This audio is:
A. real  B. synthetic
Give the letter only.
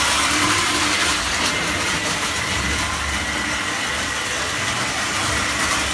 A